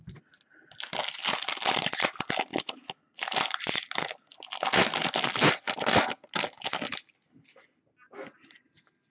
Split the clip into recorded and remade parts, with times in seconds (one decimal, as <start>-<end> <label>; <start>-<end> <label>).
0.0-9.1 recorded